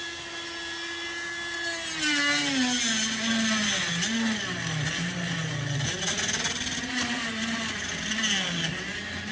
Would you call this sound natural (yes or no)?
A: yes